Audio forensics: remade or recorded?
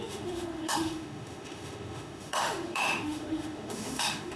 remade